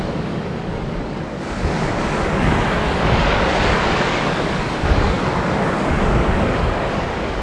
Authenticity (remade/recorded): remade